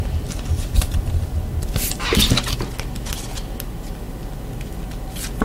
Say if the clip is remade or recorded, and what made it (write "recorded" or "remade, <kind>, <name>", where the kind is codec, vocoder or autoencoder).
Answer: recorded